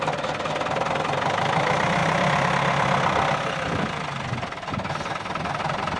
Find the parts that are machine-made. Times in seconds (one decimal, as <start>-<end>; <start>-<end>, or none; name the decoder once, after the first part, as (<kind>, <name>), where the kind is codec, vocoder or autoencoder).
none